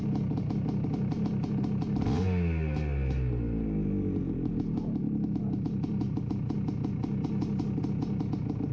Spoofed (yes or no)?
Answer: no